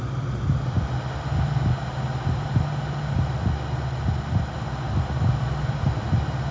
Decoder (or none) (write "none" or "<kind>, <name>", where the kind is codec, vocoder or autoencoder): none